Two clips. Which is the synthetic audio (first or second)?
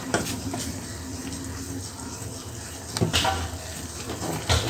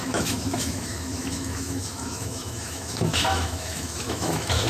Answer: second